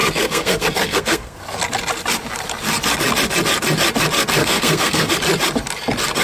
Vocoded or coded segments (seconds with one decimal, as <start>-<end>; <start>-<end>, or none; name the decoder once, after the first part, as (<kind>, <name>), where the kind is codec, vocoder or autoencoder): 0.0-1.4 (codec, SNAC); 4.4-5.1